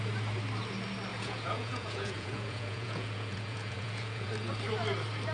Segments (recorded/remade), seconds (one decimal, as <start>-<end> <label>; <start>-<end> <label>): 0.0-1.1 recorded; 1.1-4.3 remade; 4.3-5.3 recorded